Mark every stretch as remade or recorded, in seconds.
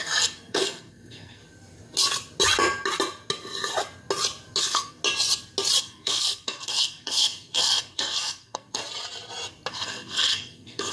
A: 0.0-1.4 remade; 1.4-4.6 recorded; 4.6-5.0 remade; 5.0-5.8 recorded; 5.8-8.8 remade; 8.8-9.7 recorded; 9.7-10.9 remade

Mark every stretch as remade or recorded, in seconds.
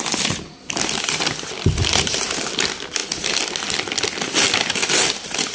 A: 0.0-5.5 recorded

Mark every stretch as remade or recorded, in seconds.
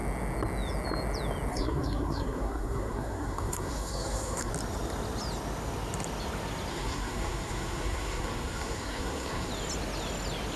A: 0.0-1.5 recorded; 1.5-4.5 remade; 4.5-6.7 recorded; 6.7-9.5 remade; 9.5-10.6 recorded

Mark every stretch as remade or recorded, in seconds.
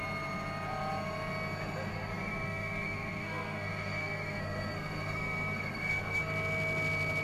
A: 0.0-1.9 recorded; 1.9-6.2 remade; 6.2-7.2 recorded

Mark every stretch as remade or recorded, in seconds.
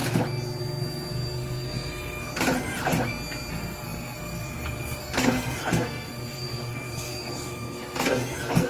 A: 0.0-0.6 recorded; 0.6-2.3 remade; 2.3-3.5 recorded; 3.5-8.7 remade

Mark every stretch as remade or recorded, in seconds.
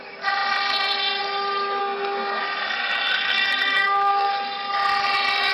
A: 0.0-1.8 recorded; 1.8-2.4 remade; 2.4-3.1 recorded; 3.1-4.3 remade; 4.3-5.5 recorded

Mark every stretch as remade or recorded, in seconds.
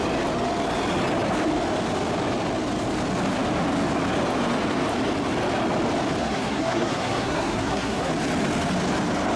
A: 0.0-6.2 recorded; 6.2-8.1 remade; 8.1-9.4 recorded